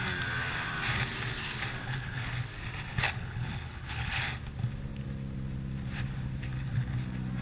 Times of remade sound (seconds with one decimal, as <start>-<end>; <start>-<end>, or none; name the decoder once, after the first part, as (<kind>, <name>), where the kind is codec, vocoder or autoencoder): 1.8-2.3 (codec, HILCodec); 2.9-4.2